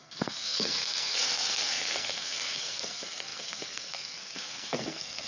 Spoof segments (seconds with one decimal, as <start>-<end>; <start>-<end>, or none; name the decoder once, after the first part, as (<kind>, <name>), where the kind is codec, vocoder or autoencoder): 0.0-5.3 (codec, SNAC)